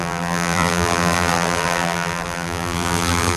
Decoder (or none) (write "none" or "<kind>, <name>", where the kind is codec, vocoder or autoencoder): vocoder, BigVGAN v2